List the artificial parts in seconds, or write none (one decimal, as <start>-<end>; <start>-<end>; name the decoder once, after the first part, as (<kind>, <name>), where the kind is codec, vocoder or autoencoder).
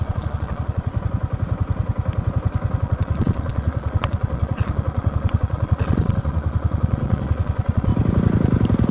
0.0-0.9 (vocoder, Vocos); 2.8-7.9